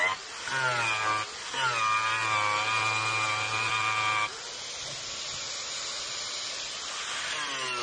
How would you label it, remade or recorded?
recorded